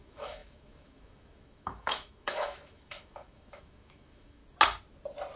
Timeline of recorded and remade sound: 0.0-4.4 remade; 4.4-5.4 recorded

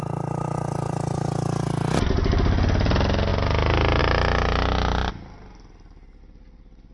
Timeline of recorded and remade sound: 0.0-5.0 recorded; 5.0-6.2 remade; 6.2-6.9 recorded

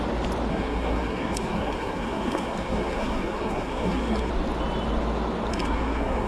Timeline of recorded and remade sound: 0.0-0.5 recorded; 0.5-4.3 remade; 4.3-5.5 recorded; 5.5-6.3 remade

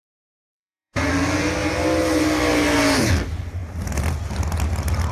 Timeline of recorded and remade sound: 0.0-1.1 remade; 1.1-5.1 recorded

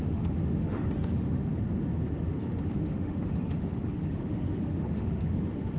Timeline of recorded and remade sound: 0.0-1.5 remade; 1.5-2.3 recorded; 2.3-5.8 remade